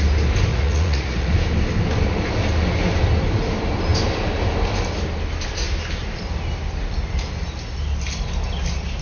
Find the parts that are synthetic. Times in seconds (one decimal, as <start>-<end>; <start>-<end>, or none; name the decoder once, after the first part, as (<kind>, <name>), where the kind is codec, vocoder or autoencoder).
0.5-1.3 (vocoder, Vocos)